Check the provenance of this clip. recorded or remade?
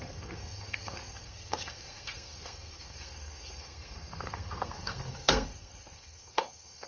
remade